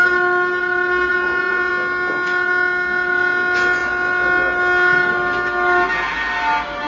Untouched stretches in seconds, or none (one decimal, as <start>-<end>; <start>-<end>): 0.0-1.1; 1.7-6.9